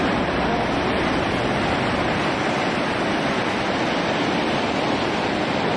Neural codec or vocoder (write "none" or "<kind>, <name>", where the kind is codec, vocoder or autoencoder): vocoder, BigVGAN v2